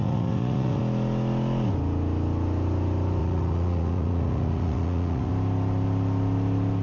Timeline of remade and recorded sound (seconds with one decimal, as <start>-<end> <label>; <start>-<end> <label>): 0.0-0.8 remade; 0.8-3.2 recorded; 3.2-5.3 remade; 5.3-6.8 recorded